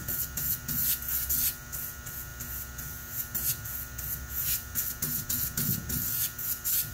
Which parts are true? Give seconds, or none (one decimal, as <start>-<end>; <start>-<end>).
0.0-6.9